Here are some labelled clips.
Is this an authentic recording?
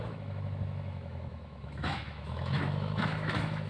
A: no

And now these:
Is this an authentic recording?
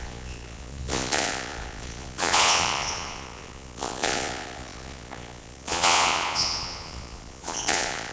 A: no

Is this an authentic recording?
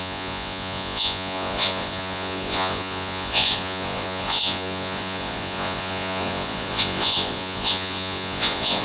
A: no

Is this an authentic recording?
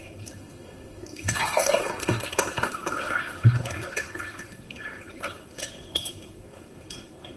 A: no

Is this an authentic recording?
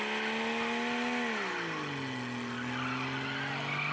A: yes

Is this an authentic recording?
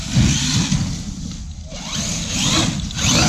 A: yes